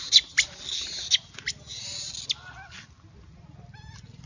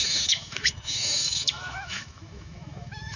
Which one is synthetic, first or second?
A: second